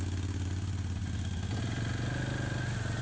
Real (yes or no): yes